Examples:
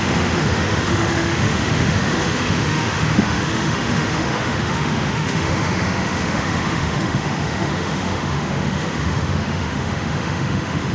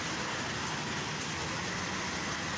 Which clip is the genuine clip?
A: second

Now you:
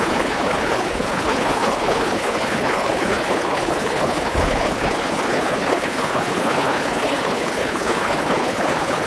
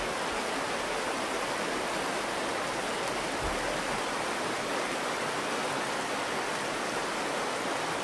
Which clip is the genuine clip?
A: second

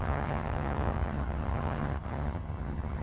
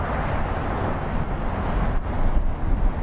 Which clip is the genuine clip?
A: second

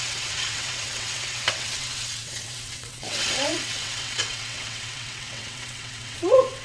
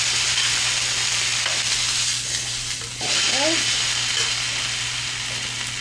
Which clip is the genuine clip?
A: second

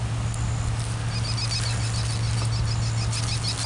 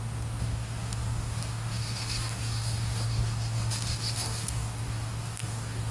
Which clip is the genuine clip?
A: first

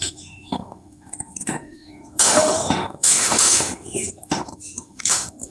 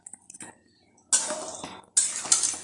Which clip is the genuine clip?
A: second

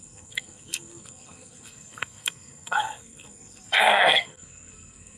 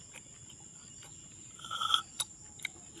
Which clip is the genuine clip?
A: second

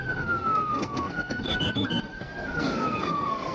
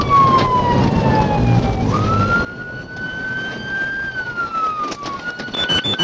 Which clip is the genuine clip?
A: second